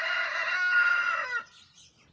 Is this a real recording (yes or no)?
yes